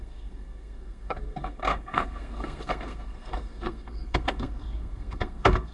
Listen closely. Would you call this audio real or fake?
fake